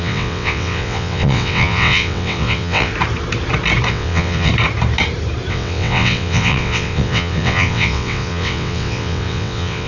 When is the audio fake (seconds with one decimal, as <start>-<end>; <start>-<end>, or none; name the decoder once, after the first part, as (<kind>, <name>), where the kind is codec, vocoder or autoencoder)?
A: 0.0-2.9 (vocoder, WaveNeXt); 3.9-4.5; 5.5-9.9